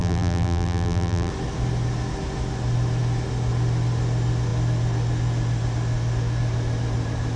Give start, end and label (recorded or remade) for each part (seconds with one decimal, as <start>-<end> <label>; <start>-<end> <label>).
0.0-1.3 remade; 1.3-7.4 recorded